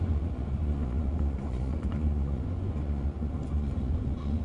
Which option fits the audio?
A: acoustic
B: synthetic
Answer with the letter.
B